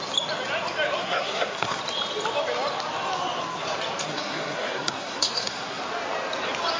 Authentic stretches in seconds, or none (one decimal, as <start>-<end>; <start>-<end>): 0.0-1.0; 1.8-4.0; 5.8-6.8